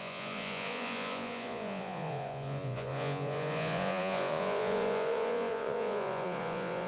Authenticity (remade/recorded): remade